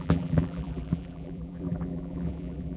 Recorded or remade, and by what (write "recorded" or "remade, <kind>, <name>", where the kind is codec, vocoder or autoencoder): remade, vocoder, BigVGAN v2